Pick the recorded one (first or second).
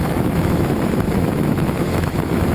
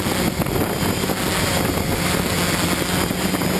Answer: second